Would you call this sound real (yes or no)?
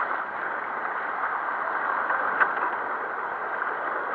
yes